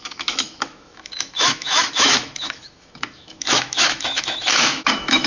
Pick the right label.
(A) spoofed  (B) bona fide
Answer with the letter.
A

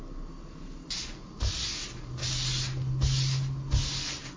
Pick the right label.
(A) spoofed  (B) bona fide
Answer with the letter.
B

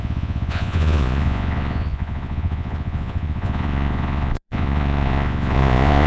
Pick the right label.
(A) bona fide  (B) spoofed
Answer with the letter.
B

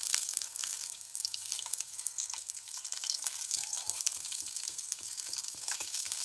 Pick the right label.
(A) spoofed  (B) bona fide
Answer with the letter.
A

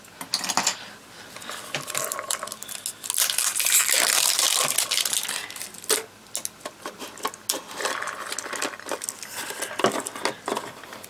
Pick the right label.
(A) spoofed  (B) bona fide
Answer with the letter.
B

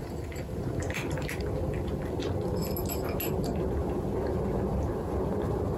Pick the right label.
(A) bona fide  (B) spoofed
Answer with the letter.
A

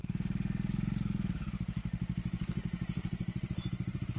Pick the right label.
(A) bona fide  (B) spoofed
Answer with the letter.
A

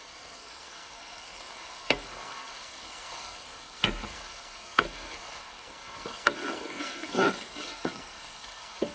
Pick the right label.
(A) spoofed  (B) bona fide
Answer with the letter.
A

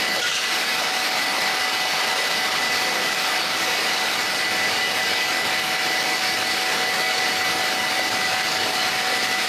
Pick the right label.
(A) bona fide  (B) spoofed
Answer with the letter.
B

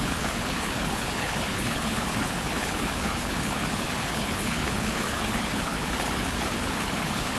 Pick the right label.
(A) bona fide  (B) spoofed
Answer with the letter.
B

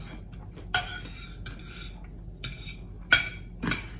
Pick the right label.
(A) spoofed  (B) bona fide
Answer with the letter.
B